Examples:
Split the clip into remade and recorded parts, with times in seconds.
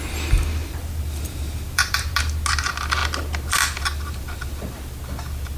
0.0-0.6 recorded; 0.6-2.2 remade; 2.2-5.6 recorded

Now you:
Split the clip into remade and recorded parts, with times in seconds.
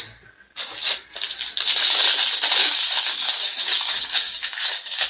0.0-2.6 recorded; 2.6-5.1 remade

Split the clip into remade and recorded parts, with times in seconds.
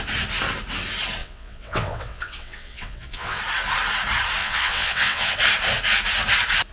0.0-1.2 recorded; 1.2-3.4 remade; 3.4-4.4 recorded; 4.4-5.3 remade; 5.3-6.7 recorded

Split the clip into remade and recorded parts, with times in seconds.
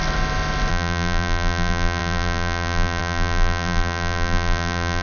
0.0-0.7 recorded; 0.7-5.0 remade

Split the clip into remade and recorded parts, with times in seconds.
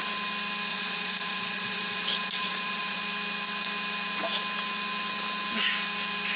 0.0-0.7 recorded; 0.7-3.0 remade; 3.0-6.4 recorded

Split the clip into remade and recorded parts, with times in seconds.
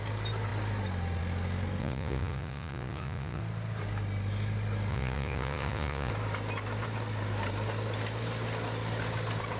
0.0-1.8 recorded; 1.8-3.4 remade; 3.4-4.9 recorded; 4.9-6.1 remade; 6.1-9.6 recorded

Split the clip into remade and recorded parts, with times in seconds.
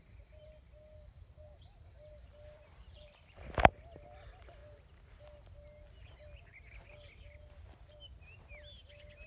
0.0-9.3 recorded